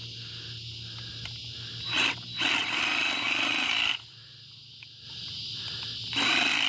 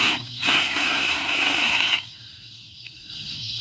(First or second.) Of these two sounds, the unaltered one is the first